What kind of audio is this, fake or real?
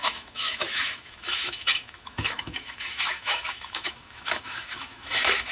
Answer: fake